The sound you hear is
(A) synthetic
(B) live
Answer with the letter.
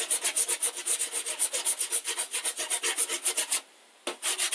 B